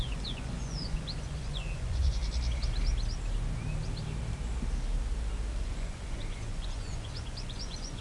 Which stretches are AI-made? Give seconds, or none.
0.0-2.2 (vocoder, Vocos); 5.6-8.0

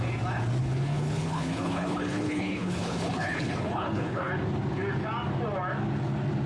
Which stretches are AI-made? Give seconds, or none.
0.6-4.3 (codec, HILCodec)

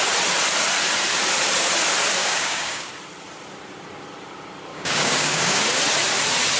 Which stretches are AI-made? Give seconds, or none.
2.2-2.9 (codec, DAC); 4.7-5.6

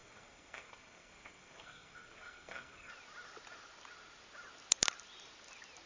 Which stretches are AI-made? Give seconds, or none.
0.0-2.9 (codec, SNAC)

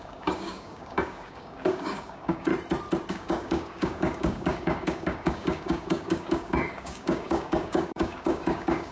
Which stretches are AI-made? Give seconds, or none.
0.0-2.5 (codec, DAC); 3.1-8.9

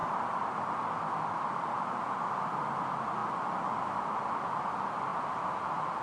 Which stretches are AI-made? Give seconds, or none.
none